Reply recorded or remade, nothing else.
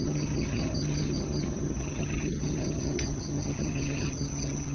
remade